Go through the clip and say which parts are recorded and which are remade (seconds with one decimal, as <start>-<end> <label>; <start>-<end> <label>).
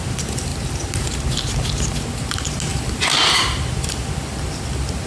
0.0-2.7 recorded; 2.7-3.4 remade; 3.4-5.1 recorded